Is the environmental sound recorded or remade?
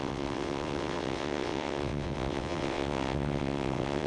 remade